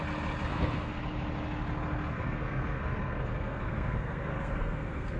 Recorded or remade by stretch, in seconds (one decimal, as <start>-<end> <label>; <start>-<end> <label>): 0.0-0.5 recorded; 0.5-1.0 remade; 1.0-2.1 recorded; 2.1-5.2 remade